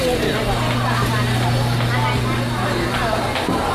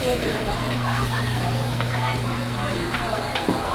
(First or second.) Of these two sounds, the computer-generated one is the second